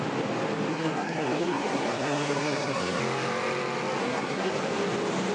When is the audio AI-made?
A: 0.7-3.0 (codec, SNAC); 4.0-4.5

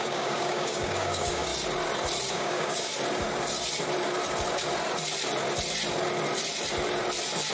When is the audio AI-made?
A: 0.0-1.5 (codec, DAC); 2.3-2.9

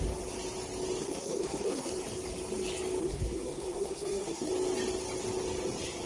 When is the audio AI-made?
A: 1.0-1.9 (codec, SNAC); 3.0-4.5

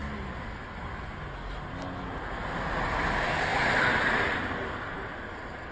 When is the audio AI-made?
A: none